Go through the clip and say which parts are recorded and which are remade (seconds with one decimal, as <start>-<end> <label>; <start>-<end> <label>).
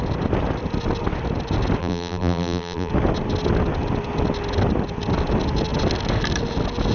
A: 0.0-1.8 recorded; 1.8-2.9 remade; 2.9-6.9 recorded